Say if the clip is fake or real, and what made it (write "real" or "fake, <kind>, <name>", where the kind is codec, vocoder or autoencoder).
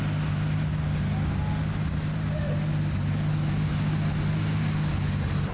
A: real